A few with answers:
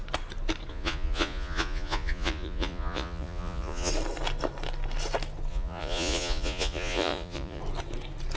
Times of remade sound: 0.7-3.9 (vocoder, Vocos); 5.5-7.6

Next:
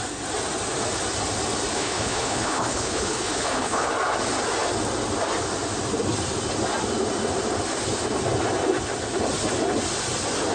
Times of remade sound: 1.7-3.9 (codec, HILCodec)

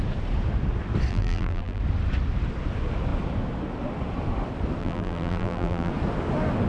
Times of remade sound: 1.1-1.8 (vocoder, BigVGAN v2); 4.8-5.9

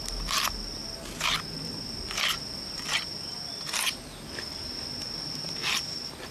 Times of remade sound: none

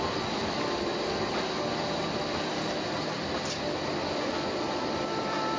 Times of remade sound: 0.0-0.9 (vocoder, BigVGAN v2); 4.3-5.6

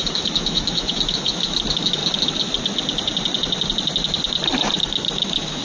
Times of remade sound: 0.0-2.0 (autoencoder, DAC-VAE); 4.8-5.6

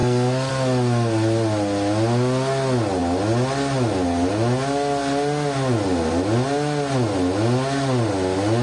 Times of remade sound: 0.0-0.5 (codec, SNAC)